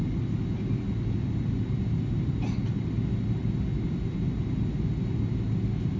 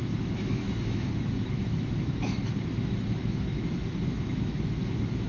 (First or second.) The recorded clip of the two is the first